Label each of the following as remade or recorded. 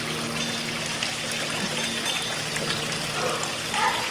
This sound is recorded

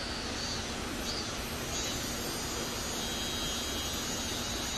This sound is recorded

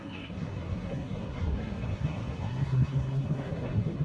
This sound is remade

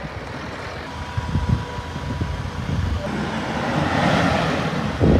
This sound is recorded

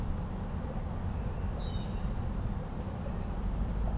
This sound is recorded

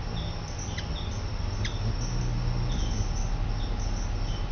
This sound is recorded